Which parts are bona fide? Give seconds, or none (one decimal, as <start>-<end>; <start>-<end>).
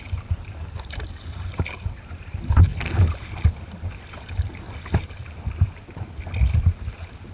2.7-7.3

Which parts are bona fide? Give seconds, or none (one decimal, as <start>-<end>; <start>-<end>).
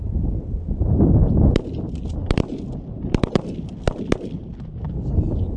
0.0-5.6